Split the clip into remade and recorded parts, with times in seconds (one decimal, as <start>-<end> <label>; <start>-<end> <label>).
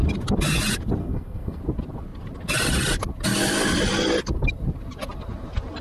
0.0-1.0 recorded; 1.0-1.6 remade; 1.6-5.8 recorded